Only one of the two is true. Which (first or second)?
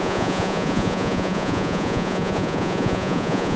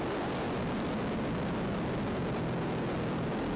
second